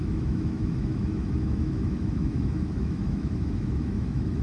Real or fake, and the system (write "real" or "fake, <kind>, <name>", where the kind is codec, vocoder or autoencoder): fake, autoencoder, DAC-VAE